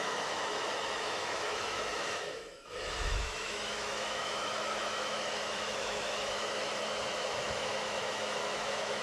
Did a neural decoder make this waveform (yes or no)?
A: yes